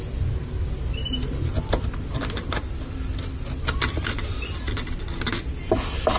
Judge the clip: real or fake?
real